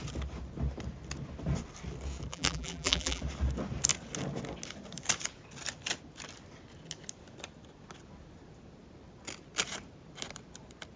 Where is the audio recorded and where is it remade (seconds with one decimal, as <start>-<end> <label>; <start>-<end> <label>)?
0.0-2.3 recorded; 2.3-3.2 remade; 3.2-11.0 recorded